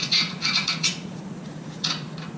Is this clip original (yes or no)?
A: no